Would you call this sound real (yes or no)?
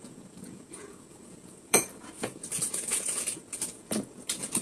no